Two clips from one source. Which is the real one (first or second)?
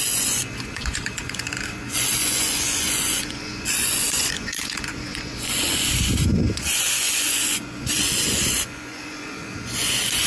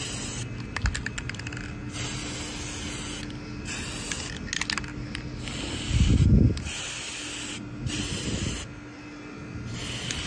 second